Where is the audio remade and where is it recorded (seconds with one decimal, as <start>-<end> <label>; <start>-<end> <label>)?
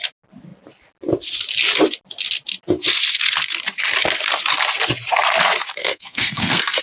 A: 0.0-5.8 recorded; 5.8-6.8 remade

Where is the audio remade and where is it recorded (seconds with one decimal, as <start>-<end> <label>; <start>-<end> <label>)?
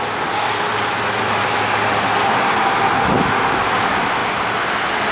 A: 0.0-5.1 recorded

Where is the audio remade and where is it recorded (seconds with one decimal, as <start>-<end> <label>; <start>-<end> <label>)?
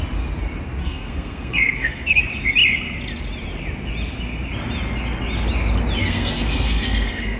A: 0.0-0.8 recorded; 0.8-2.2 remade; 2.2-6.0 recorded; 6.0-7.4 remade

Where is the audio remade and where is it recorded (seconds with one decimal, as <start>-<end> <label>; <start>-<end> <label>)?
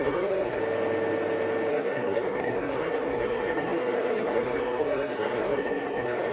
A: 0.0-0.6 remade; 0.6-1.7 recorded; 1.7-6.3 remade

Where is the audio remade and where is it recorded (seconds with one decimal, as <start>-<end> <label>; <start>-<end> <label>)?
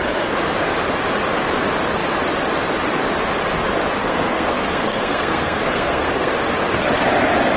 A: 0.0-4.0 recorded; 4.0-6.3 remade; 6.3-7.6 recorded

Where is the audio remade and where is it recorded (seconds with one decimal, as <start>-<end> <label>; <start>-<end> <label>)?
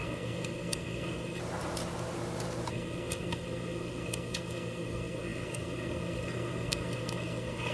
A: 0.0-1.4 remade; 1.4-2.7 recorded; 2.7-7.7 remade